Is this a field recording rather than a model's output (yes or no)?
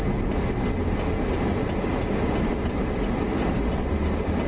yes